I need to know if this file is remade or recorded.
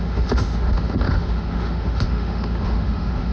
remade